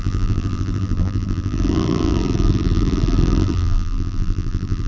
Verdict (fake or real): fake